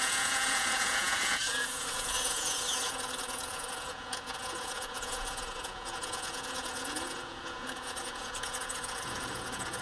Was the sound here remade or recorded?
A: remade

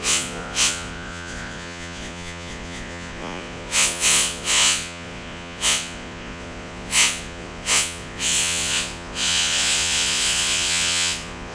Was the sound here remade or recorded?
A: remade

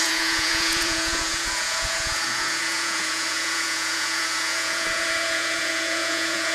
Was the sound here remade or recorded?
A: remade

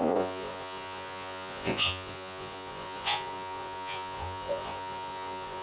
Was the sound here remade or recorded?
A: remade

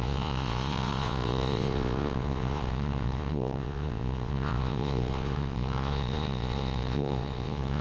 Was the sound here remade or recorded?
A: remade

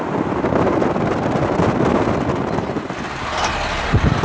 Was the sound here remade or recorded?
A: recorded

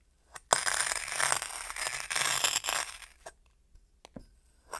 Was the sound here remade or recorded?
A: recorded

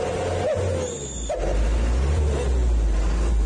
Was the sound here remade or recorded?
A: recorded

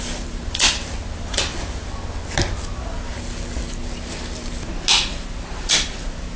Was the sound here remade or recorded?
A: recorded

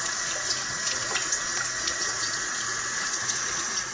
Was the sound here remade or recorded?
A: remade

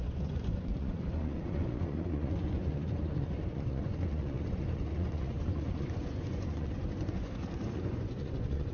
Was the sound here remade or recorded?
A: remade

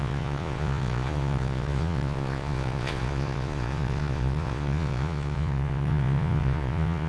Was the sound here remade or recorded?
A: remade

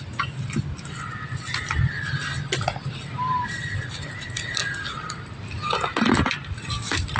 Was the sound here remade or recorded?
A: recorded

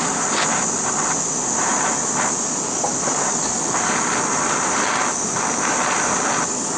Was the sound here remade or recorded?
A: recorded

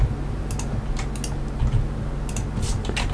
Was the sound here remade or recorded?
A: recorded